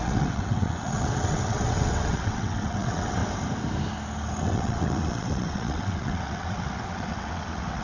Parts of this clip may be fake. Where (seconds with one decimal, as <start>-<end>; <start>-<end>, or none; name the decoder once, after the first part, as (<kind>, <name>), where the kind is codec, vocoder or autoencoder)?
0.0-3.2 (vocoder, WaveNeXt); 4.4-7.8